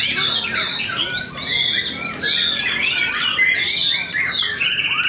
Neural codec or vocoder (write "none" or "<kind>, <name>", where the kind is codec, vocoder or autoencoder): none